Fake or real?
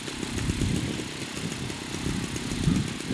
real